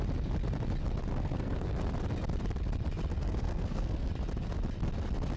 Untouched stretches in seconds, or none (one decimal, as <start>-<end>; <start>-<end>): 0.0-1.1; 1.9-3.1; 4.1-5.4